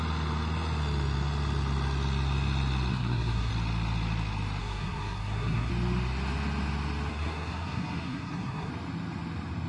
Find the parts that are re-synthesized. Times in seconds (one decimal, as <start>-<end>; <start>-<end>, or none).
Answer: 2.9-3.5; 4.6-5.7; 7.1-8.7